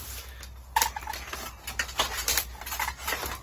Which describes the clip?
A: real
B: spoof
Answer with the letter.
A